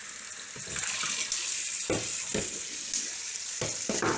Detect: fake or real real